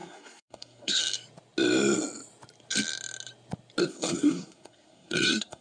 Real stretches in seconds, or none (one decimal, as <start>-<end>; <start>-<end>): 1.0-3.8